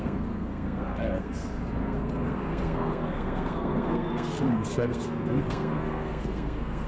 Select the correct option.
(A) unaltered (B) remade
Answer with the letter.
B